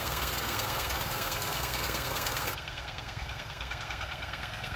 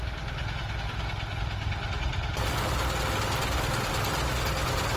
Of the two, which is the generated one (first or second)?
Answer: first